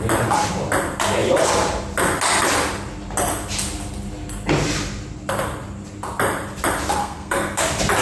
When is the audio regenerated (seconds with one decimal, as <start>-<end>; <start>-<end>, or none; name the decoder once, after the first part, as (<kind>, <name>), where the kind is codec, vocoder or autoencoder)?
7.0-7.6 (codec, SNAC)